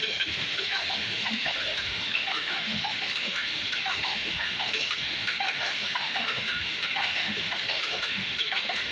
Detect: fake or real fake